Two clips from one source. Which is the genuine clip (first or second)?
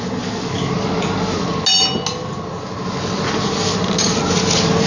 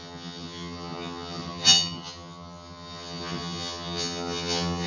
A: first